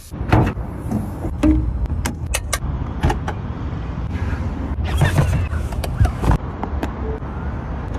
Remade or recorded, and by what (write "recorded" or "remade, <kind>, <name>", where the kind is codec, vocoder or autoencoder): recorded